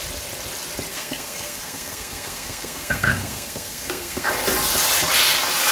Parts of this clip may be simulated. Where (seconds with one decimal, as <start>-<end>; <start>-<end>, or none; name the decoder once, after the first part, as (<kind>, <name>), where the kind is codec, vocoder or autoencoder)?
0.9-4.3 (codec, SNAC)